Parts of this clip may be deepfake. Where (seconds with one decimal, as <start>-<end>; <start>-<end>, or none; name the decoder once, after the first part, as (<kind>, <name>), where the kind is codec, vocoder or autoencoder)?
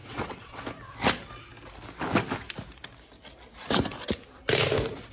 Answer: 0.0-0.6 (vocoder, WaveNeXt)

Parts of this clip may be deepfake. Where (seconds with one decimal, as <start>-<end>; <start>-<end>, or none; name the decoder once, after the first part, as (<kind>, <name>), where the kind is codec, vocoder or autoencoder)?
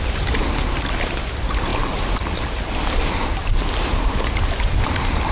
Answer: none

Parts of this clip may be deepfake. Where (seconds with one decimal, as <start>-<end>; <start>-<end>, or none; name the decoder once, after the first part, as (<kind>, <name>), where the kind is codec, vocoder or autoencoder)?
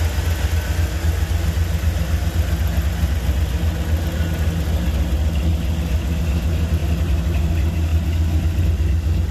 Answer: none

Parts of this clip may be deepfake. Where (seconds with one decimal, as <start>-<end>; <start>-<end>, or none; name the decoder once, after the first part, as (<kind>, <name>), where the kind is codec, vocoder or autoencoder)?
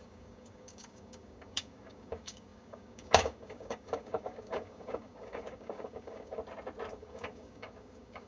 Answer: 0.0-6.4 (codec, DAC); 6.9-8.3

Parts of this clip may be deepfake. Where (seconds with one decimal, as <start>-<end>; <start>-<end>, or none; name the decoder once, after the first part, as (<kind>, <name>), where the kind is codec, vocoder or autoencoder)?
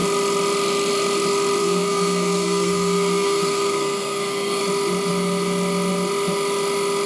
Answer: 1.6-4.6 (codec, SNAC)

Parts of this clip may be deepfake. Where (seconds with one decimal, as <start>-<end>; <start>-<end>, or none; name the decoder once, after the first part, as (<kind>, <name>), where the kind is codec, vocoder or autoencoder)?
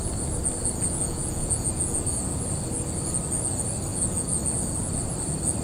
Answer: 0.6-2.1 (vocoder, Vocos); 3.9-4.4